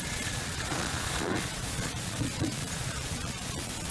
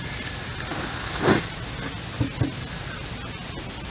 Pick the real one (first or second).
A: second